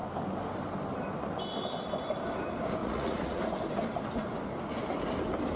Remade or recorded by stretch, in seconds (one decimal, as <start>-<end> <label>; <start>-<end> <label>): 0.0-2.8 recorded; 2.8-3.4 remade; 3.4-5.6 recorded